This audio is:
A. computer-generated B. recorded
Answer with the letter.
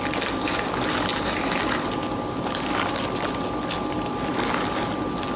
B